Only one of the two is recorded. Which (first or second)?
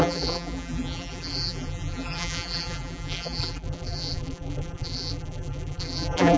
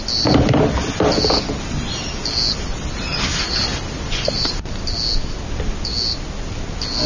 second